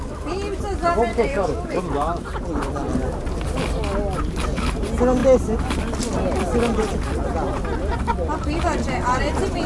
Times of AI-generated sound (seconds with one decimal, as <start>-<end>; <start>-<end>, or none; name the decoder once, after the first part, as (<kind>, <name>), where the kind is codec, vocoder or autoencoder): 1.1-1.8 (codec, DAC)